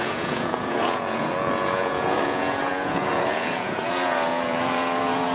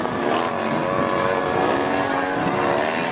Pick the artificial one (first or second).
first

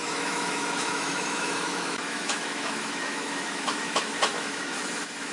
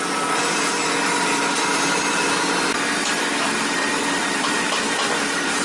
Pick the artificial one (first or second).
first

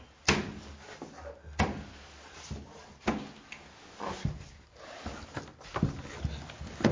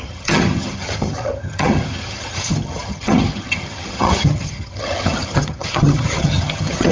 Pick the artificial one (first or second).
second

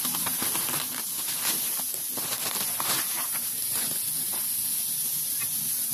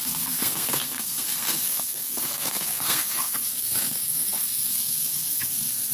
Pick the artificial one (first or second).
second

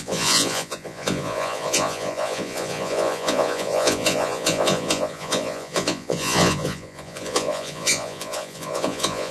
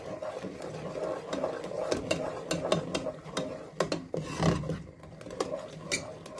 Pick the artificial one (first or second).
first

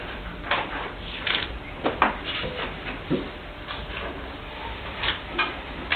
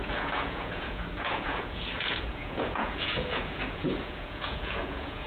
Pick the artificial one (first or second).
second